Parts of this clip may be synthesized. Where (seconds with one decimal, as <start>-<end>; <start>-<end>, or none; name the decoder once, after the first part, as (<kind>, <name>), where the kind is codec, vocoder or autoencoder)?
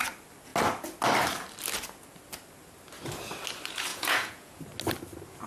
3.9-4.6 (vocoder, Vocos)